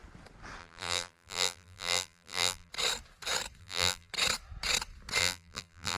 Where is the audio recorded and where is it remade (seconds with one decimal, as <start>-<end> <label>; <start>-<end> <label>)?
0.0-0.6 recorded; 0.6-2.7 remade; 2.7-3.6 recorded; 3.6-4.1 remade; 4.1-5.2 recorded; 5.2-6.0 remade